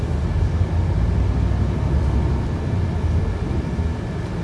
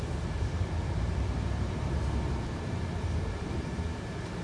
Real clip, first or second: first